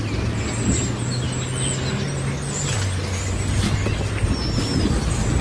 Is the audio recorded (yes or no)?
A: yes